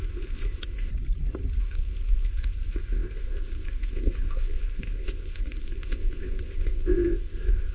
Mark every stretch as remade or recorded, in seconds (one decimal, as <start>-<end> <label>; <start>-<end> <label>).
0.0-0.9 remade; 0.9-1.6 recorded; 1.6-7.7 remade